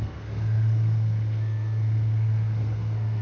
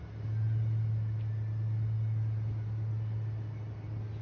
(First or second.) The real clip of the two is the second